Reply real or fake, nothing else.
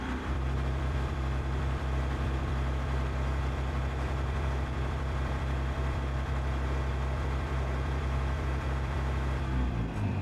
fake